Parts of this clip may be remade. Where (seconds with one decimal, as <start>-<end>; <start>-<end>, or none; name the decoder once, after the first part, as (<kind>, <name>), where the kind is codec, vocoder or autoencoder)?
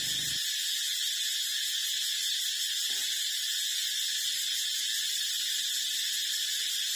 none